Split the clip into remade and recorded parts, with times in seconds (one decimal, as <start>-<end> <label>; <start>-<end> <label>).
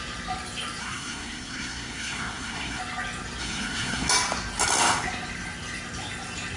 0.0-0.8 recorded; 0.8-2.8 remade; 2.8-3.4 recorded; 3.4-4.1 remade; 4.1-6.6 recorded